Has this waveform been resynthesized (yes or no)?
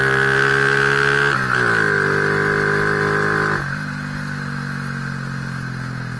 no